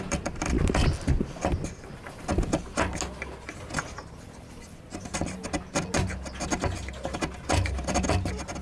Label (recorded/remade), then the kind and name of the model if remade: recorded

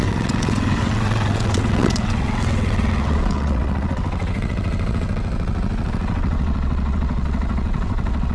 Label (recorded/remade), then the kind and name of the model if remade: remade, vocoder, WaveNeXt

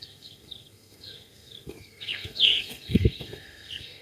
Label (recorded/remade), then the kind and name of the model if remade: remade, codec, SNAC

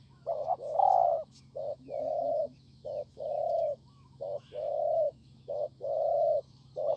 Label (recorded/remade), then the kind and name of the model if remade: remade, autoencoder, DAC-VAE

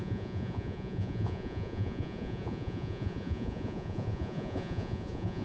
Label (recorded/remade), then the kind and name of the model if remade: remade, vocoder, Vocos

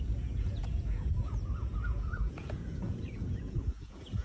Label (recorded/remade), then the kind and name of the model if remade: remade, vocoder, Vocos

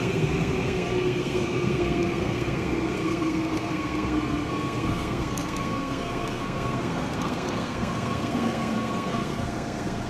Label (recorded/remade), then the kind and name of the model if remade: remade, codec, SNAC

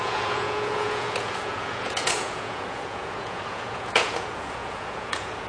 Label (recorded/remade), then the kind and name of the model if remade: remade, vocoder, Vocos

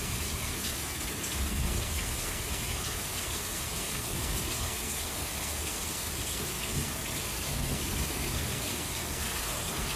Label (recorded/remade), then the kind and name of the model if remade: remade, codec, SNAC